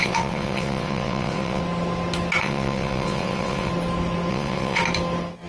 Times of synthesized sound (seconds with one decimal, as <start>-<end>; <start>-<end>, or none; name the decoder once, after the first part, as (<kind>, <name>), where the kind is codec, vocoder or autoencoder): 0.0-1.6 (vocoder, WaveNeXt); 2.4-3.7; 4.3-4.8